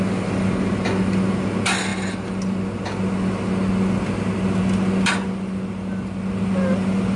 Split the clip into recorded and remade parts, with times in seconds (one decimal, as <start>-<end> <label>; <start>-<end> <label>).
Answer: 0.0-7.2 recorded